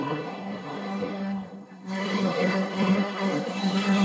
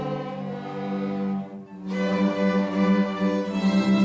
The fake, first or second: first